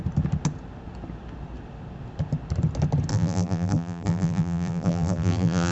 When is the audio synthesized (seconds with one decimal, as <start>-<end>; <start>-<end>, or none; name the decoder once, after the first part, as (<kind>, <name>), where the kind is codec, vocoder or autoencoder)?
3.1-5.7 (vocoder, BigVGAN v2)